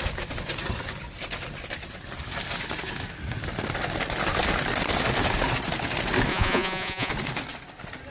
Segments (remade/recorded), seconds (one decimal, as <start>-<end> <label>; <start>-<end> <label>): 0.0-6.3 recorded; 6.3-7.1 remade; 7.1-8.1 recorded